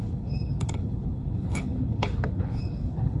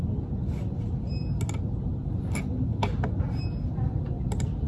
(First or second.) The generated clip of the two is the first